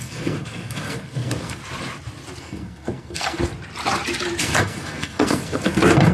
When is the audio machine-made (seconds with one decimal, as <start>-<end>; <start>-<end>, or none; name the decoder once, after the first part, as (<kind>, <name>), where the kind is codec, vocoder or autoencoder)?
0.0-1.6 (codec, SNAC); 2.4-3.5; 4.4-6.1